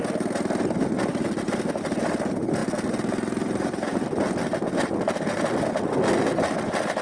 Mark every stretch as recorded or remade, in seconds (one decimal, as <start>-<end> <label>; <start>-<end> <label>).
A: 0.0-7.0 recorded